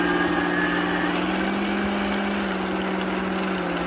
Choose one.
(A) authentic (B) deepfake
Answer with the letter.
A